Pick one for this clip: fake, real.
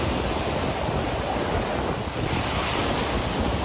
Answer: real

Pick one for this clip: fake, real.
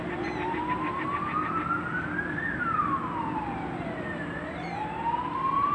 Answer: fake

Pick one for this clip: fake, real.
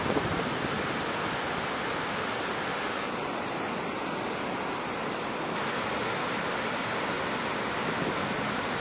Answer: real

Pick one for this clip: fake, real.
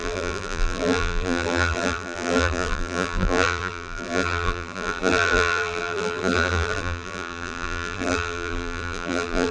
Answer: fake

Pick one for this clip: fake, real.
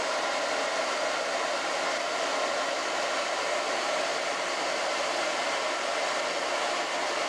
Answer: real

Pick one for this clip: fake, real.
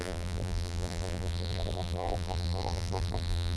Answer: fake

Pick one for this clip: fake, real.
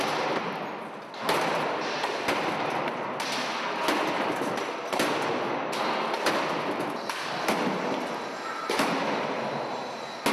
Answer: real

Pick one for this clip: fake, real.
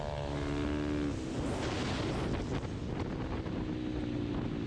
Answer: real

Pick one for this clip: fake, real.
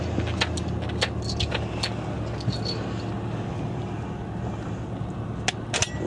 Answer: real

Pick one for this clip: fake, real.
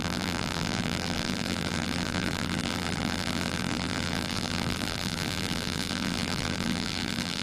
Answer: fake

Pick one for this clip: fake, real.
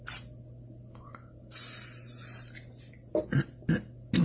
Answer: real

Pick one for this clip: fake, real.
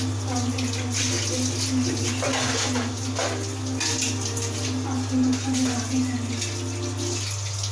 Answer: real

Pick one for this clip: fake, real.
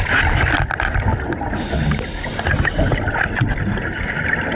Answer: real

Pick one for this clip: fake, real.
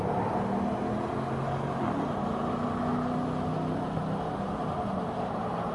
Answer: real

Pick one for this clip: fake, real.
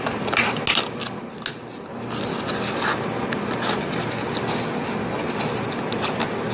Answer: real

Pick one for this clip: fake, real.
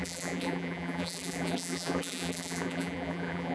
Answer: fake